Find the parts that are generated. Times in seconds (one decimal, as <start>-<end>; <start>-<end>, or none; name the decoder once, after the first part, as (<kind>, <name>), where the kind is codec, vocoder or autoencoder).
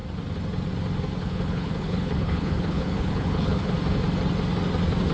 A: 1.2-3.7 (codec, HILCodec)